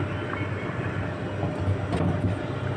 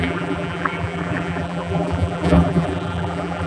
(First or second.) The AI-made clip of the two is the second